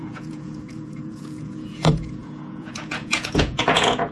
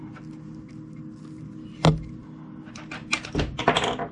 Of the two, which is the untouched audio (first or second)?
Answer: second